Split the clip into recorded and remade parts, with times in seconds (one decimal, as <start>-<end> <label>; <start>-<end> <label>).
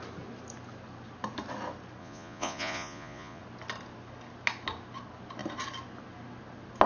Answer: 0.0-2.0 recorded; 2.0-3.4 remade; 3.4-6.9 recorded